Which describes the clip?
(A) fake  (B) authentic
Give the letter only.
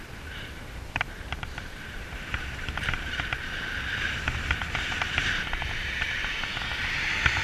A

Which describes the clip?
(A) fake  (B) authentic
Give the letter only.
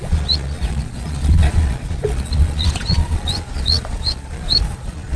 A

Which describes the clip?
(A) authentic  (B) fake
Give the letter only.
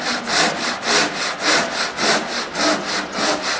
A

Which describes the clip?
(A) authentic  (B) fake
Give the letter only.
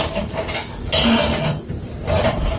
A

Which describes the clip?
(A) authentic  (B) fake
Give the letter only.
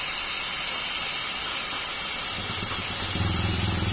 A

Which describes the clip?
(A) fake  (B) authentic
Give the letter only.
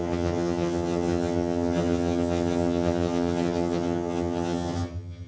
A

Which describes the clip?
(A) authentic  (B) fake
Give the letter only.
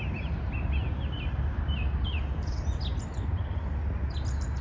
A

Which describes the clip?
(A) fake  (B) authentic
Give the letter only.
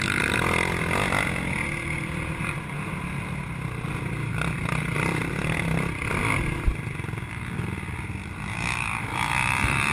B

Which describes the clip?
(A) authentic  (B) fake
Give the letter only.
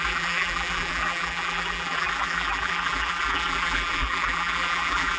B